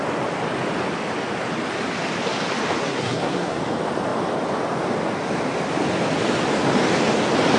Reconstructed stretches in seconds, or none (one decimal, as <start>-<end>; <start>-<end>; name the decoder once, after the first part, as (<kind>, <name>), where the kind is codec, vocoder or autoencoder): 2.8-3.6 (codec, SNAC)